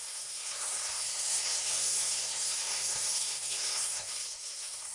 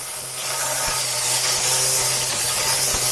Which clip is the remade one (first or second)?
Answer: first